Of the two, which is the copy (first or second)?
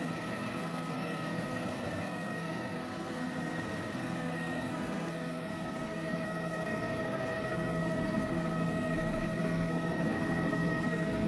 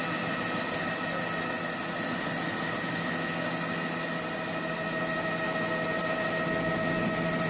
first